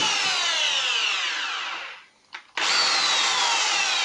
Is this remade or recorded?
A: recorded